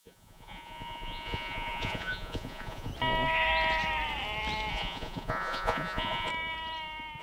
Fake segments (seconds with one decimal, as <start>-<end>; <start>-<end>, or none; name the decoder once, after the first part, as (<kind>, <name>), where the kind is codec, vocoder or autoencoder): 0.0-2.9 (vocoder, Vocos); 4.7-6.3

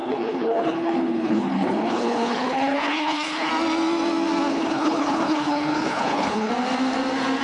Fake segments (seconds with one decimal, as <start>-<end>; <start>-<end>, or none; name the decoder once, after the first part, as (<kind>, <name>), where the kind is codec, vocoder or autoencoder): 0.0-3.5 (codec, HILCodec); 4.5-6.5

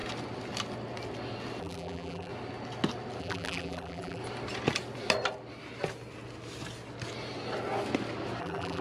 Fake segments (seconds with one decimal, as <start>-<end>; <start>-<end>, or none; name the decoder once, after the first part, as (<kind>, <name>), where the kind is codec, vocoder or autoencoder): 1.6-2.3 (vocoder, BigVGAN v2); 3.2-4.2; 8.4-8.8

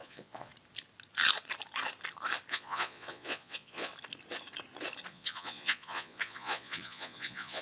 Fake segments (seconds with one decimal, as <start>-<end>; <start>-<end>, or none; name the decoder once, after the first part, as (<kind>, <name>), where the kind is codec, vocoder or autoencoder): 0.0-0.5 (vocoder, Vocos); 2.5-3.9; 5.1-7.6

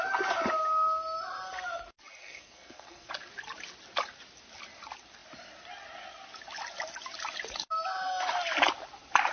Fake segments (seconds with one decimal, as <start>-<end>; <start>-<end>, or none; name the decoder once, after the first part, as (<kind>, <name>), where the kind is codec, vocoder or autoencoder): 2.2-3.1 (codec, SNAC)

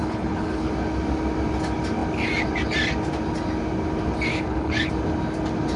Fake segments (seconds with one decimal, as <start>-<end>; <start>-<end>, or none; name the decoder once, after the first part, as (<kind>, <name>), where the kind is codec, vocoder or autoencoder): 0.0-0.7 (codec, HILCodec); 4.3-4.9